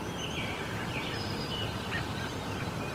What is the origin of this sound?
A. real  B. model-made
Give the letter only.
B